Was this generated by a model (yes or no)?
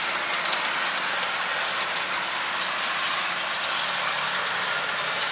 no